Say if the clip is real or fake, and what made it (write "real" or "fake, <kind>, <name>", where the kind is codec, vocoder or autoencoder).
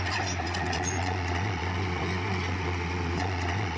fake, vocoder, Vocos